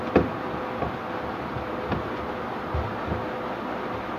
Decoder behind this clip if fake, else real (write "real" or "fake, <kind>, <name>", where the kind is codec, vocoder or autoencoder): real